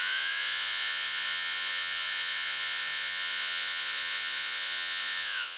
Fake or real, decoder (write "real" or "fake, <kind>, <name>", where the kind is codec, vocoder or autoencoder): fake, vocoder, Vocos